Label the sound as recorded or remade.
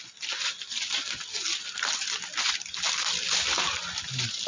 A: recorded